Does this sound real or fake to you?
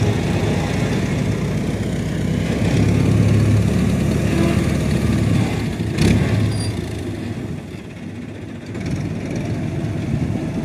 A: real